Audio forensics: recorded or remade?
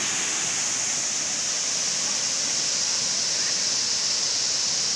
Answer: recorded